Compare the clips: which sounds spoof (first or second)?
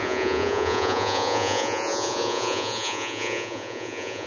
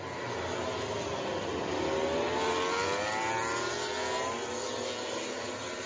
first